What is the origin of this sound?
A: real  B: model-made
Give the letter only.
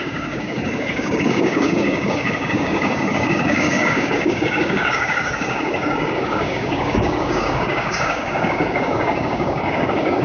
B